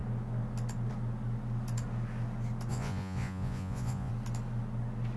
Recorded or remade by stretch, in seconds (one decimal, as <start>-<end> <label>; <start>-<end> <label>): 0.0-2.7 recorded; 2.7-4.1 remade; 4.1-5.2 recorded

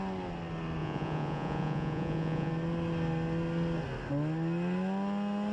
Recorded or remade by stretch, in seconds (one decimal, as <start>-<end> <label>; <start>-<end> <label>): 0.0-0.8 recorded; 0.8-2.5 remade; 2.5-5.5 recorded

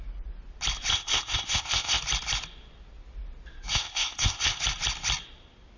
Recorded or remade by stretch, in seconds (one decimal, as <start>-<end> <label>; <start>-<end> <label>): 0.0-0.9 recorded; 0.9-2.0 remade; 2.0-3.7 recorded; 3.7-4.6 remade; 4.6-5.8 recorded

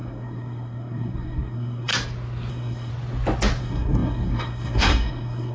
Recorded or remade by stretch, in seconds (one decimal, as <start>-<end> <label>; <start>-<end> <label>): 0.0-1.9 remade; 1.9-2.5 recorded; 2.5-2.9 remade; 2.9-3.6 recorded; 3.6-5.5 remade

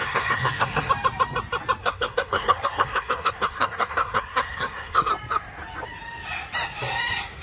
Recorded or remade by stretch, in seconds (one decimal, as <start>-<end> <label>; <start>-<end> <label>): 0.0-0.9 remade; 0.9-1.8 recorded; 1.8-5.1 remade; 5.1-7.4 recorded